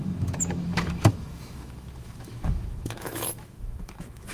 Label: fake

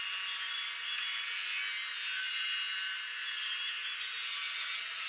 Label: real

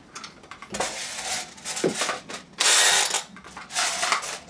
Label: real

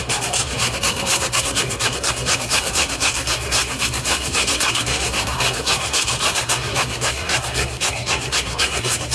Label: fake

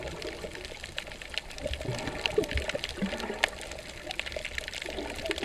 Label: real